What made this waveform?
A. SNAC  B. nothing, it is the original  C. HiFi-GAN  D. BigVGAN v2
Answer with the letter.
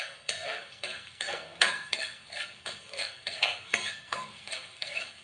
A